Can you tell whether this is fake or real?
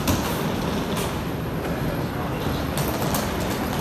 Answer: real